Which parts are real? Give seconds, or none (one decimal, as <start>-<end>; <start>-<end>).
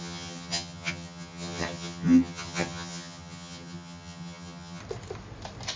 4.8-5.8